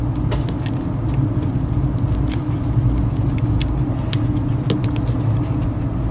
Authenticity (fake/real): real